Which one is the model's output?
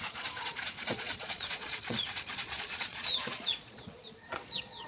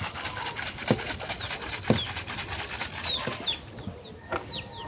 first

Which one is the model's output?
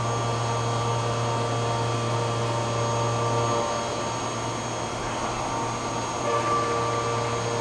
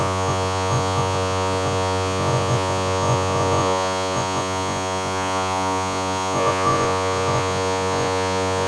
second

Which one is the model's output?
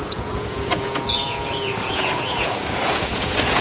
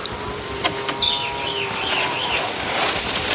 first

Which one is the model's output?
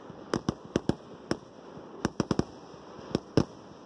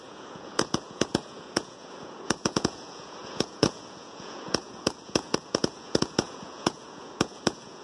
second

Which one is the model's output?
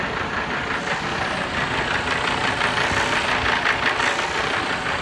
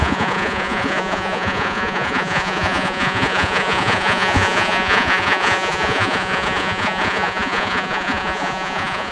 second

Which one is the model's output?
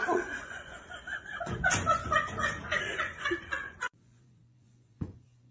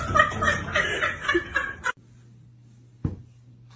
first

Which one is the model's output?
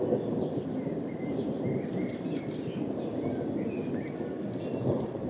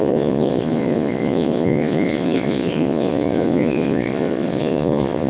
second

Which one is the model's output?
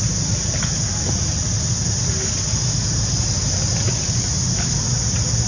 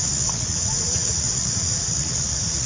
second